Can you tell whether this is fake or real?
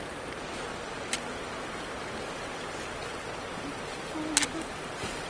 real